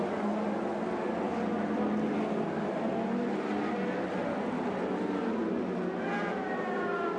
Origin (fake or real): real